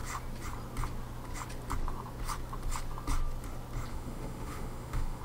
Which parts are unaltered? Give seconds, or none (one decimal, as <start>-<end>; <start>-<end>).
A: 0.0-3.9